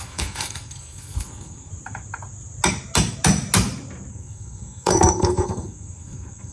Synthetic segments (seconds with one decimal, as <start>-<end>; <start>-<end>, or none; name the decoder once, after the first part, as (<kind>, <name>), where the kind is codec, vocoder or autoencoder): 0.0-1.7 (codec, SNAC); 4.1-6.5